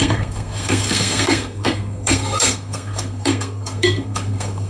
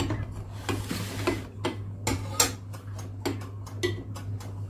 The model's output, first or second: first